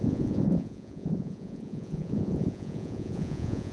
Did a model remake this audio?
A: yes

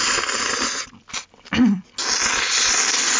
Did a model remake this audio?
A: no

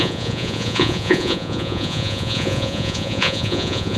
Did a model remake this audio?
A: yes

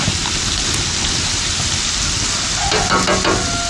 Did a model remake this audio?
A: no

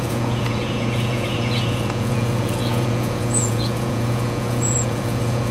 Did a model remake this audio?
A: yes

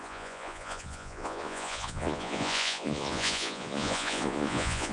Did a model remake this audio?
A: yes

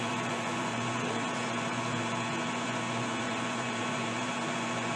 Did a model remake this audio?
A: yes